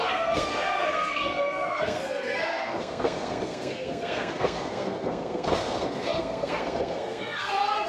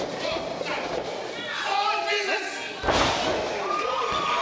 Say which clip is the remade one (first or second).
first